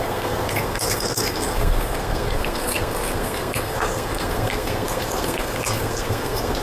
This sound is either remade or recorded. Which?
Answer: remade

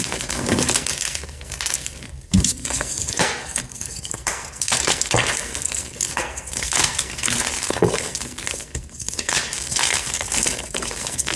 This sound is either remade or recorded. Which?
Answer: remade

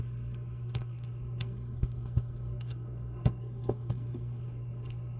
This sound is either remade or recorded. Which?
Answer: remade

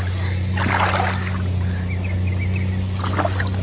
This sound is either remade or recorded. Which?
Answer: recorded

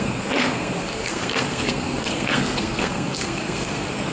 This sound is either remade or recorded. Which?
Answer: remade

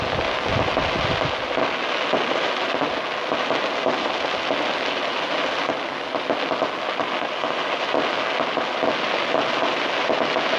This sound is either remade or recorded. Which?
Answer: recorded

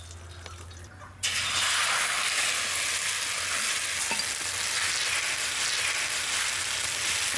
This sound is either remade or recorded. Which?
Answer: recorded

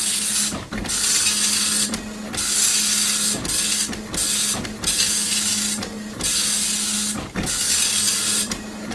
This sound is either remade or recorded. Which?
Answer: recorded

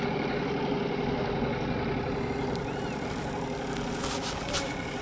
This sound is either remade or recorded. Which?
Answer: recorded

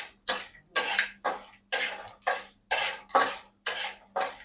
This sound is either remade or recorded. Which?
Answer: recorded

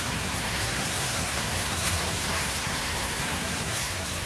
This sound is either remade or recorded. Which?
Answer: remade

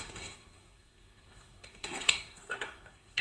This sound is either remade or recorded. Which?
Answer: remade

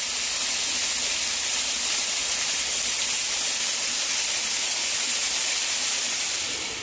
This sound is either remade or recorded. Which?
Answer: recorded